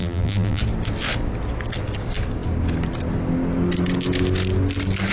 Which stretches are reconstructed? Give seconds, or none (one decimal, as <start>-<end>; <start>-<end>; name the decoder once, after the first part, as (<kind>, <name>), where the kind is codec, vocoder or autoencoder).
0.0-0.6 (vocoder, BigVGAN v2)